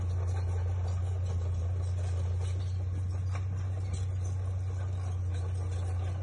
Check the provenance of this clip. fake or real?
real